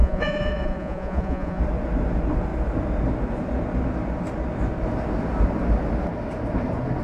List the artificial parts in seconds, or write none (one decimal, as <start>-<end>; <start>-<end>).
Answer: 0.0-1.6